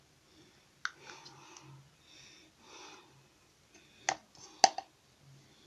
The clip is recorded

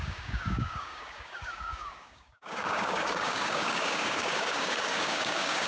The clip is remade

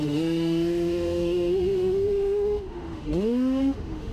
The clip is remade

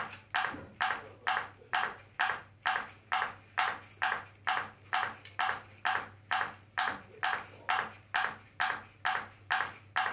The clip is recorded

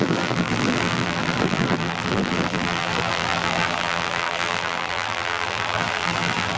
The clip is remade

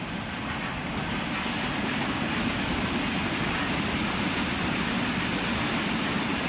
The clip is recorded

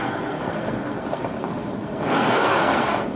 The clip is remade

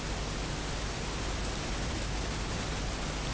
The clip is recorded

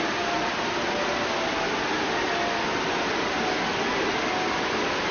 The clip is recorded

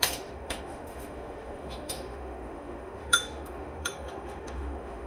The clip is remade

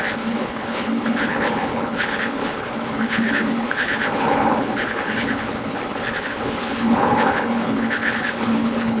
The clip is remade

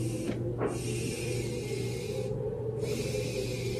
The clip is recorded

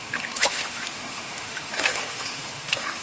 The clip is remade